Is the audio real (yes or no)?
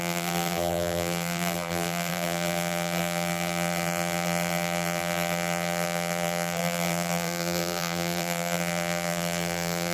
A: no